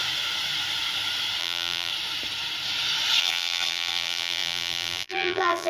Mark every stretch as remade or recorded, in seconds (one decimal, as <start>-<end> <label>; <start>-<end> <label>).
0.0-1.4 recorded; 1.4-1.9 remade; 1.9-3.2 recorded; 3.2-5.7 remade